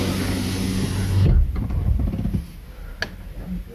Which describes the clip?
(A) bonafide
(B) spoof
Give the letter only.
A